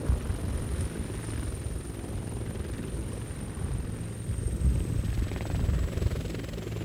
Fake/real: fake